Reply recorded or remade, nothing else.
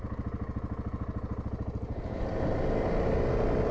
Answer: recorded